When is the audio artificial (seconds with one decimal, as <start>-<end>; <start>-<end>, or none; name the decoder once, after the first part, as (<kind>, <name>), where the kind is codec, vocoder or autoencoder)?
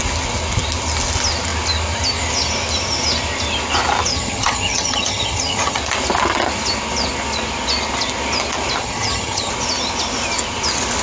4.1-5.8 (vocoder, HiFi-GAN); 8.8-9.5